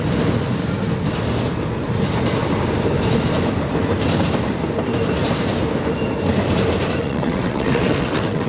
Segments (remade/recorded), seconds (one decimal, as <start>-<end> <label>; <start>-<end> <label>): 0.0-7.0 recorded; 7.0-8.5 remade